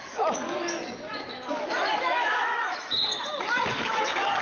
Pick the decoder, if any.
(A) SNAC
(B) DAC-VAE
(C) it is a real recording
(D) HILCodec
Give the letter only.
B